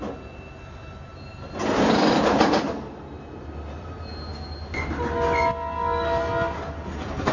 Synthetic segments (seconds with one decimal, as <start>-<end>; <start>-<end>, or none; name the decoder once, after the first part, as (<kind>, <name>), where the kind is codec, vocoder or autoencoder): none